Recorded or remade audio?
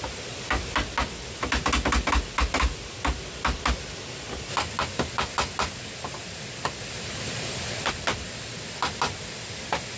recorded